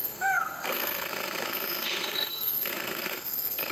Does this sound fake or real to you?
fake